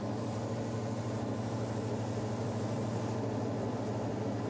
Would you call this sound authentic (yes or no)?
yes